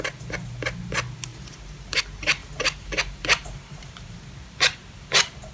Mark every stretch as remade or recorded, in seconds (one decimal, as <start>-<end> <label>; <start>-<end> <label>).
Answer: 0.0-1.3 recorded; 1.3-2.0 remade; 2.0-2.4 recorded; 2.4-4.3 remade; 4.3-5.5 recorded